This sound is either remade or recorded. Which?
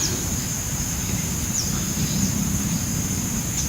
remade